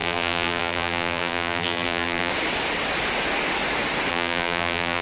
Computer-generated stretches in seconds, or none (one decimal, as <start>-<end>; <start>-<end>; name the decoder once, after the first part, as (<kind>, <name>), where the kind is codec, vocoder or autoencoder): 0.0-2.3 (vocoder, BigVGAN v2); 4.1-5.0